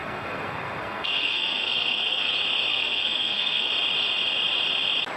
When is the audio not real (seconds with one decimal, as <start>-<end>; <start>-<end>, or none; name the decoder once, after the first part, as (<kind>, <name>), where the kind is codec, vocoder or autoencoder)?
0.0-2.3 (codec, SNAC); 2.7-3.7